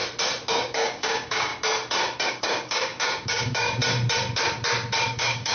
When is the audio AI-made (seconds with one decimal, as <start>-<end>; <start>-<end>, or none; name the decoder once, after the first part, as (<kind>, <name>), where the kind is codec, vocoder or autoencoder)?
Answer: 0.5-1.5 (codec, DAC); 2.3-3.8; 5.1-5.5